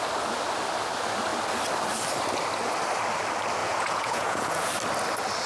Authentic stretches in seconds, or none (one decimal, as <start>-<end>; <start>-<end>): 0.0-3.6; 4.7-5.5